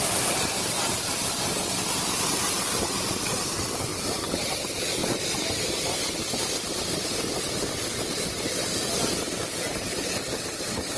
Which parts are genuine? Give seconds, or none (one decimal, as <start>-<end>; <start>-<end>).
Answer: 0.0-11.0